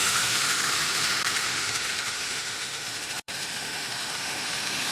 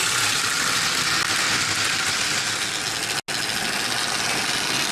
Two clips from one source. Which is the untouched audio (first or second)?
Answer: second